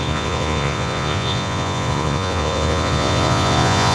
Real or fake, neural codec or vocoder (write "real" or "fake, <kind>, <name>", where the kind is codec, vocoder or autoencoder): fake, vocoder, Vocos